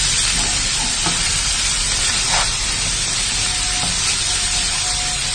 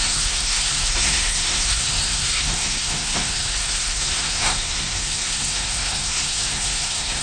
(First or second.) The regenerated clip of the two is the second